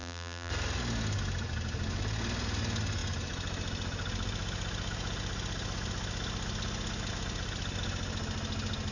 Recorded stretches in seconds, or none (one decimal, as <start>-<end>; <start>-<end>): 0.5-8.9